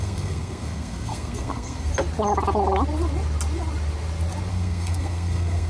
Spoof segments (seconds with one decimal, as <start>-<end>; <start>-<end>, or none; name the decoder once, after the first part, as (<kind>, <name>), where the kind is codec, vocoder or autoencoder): 0.0-1.9 (codec, SNAC); 4.5-5.7